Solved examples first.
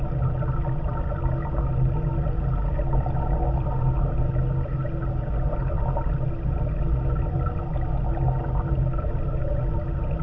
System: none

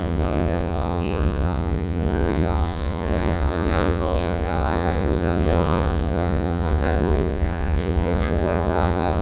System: vocoder, Vocos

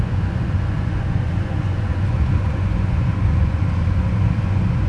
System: vocoder, Vocos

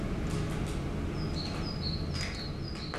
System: none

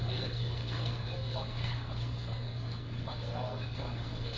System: codec, SNAC